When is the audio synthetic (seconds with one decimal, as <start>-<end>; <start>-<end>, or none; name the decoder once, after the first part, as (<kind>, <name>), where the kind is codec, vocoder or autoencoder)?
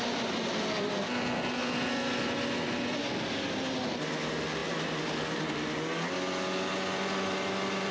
none